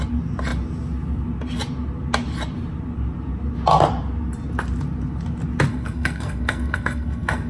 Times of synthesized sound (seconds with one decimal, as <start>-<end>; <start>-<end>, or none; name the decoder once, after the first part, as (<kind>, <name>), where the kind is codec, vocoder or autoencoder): 5.7-7.5 (codec, SNAC)